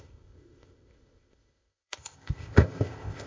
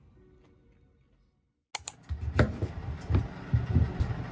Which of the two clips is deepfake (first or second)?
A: first